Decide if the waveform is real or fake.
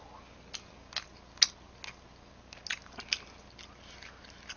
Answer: real